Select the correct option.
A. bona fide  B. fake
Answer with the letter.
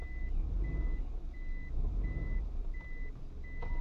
A